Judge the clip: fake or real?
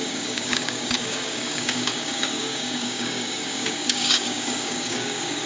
fake